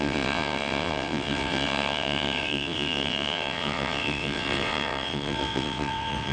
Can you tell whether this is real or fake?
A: fake